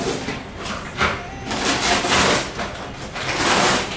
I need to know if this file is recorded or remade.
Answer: recorded